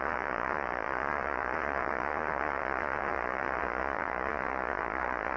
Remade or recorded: remade